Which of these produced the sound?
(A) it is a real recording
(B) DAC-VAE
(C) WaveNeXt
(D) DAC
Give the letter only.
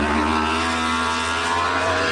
A